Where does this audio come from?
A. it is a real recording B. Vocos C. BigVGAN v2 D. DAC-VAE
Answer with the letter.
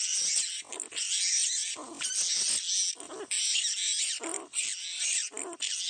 A